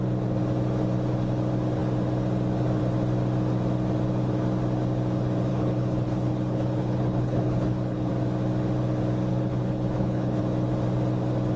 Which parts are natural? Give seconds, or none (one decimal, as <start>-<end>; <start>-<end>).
0.0-5.5; 8.1-9.3; 10.4-11.6